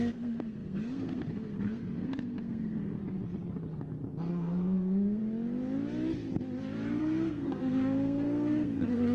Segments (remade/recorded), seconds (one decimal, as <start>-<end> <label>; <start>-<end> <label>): 0.0-3.0 remade; 3.0-4.3 recorded; 4.3-5.2 remade; 5.2-7.0 recorded; 7.0-9.1 remade